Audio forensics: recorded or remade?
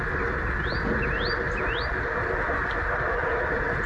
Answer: recorded